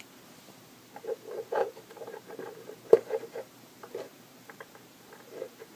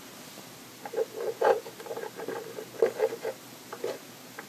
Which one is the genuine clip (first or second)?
second